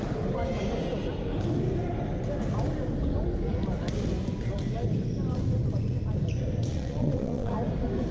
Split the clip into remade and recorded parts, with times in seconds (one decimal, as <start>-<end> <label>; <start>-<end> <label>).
0.0-6.7 recorded; 6.7-7.5 remade; 7.5-8.1 recorded